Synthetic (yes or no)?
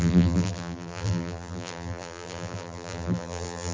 yes